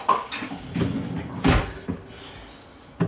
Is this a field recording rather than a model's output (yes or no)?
yes